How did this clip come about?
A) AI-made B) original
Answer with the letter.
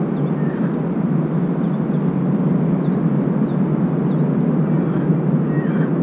B